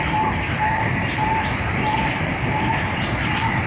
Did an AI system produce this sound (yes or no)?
no